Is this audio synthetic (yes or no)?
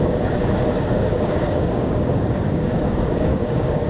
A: yes